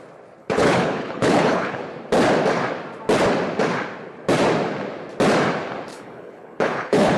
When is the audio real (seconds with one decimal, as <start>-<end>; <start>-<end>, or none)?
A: 0.0-0.4; 1.8-5.9